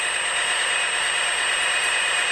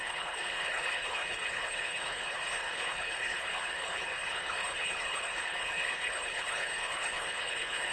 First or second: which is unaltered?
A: first